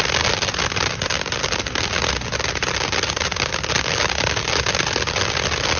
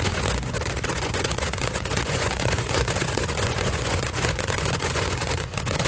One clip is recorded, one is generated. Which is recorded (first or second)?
first